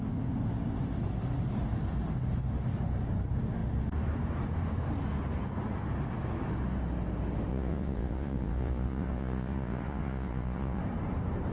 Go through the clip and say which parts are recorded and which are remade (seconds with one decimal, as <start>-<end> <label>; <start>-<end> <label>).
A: 0.0-7.5 recorded; 7.5-10.8 remade; 10.8-11.5 recorded